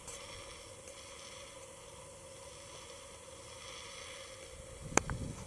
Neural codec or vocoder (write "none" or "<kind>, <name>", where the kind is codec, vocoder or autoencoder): none